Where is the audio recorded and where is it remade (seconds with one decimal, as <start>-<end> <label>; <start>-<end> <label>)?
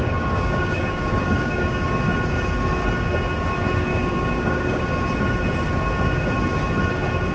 0.0-1.9 remade; 1.9-3.9 recorded; 3.9-4.8 remade; 4.8-7.3 recorded